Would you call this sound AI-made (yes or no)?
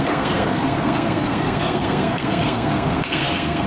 yes